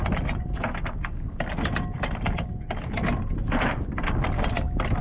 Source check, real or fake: real